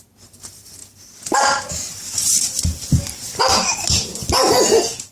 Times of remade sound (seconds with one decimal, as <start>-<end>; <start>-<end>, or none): none